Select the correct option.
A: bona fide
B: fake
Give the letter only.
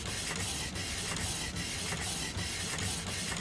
A